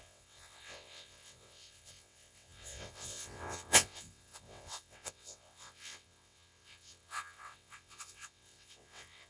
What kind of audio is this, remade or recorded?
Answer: remade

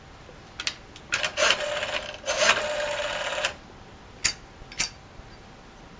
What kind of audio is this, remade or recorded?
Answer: recorded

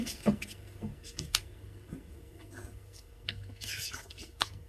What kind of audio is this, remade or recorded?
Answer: remade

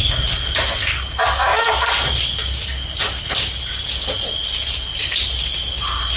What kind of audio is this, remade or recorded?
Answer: recorded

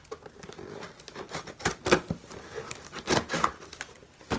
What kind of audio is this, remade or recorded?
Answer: recorded